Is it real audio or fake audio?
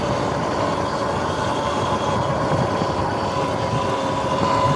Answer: real